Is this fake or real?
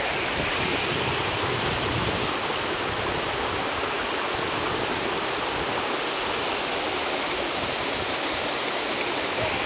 real